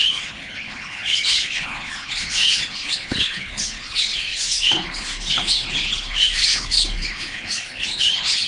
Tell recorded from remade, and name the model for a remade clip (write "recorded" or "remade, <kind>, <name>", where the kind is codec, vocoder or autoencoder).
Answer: remade, codec, HILCodec